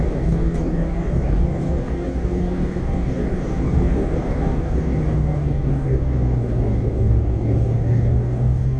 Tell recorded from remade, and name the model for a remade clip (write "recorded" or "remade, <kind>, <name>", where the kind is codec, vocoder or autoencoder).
remade, codec, DAC